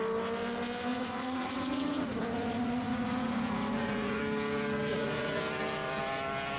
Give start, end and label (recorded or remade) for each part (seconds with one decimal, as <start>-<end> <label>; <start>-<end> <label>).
0.0-0.9 recorded; 0.9-4.2 remade; 4.2-4.9 recorded; 4.9-5.4 remade; 5.4-6.6 recorded